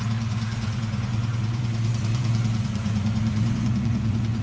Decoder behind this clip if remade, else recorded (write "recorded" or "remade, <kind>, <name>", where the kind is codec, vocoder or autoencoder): remade, vocoder, Vocos